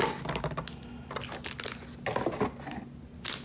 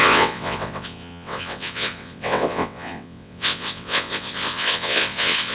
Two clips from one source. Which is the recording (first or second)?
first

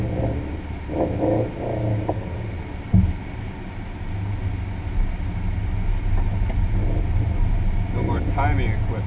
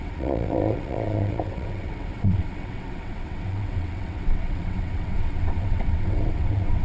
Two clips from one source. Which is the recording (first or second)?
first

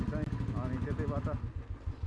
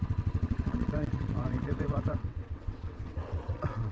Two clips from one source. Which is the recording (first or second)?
first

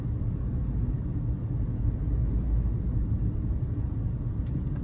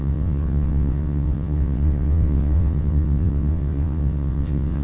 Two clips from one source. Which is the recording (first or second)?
first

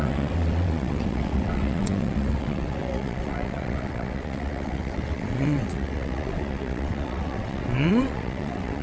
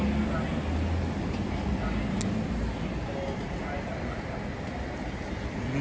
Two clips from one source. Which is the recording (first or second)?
second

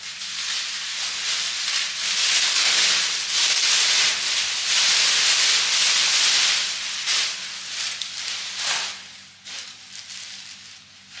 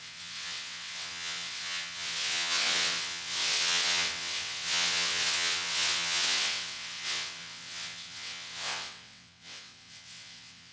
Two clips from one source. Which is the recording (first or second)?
first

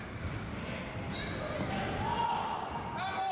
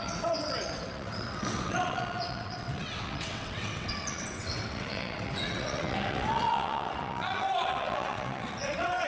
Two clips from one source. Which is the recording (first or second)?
first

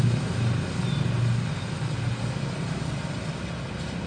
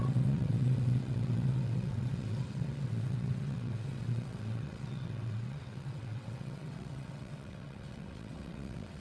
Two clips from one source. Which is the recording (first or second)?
first